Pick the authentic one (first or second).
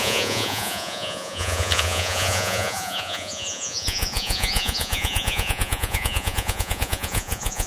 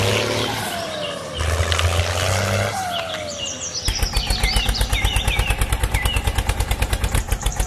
second